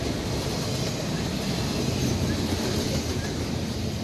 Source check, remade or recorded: recorded